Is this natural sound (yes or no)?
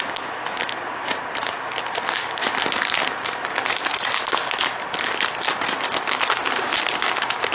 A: yes